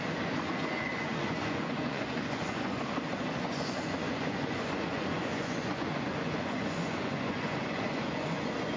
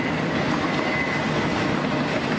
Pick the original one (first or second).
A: second